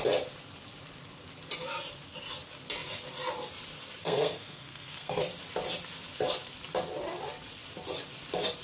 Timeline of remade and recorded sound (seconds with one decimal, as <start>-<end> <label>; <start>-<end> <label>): 0.0-4.0 recorded; 4.0-5.2 remade; 5.2-8.6 recorded